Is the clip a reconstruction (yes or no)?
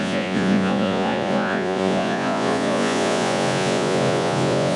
yes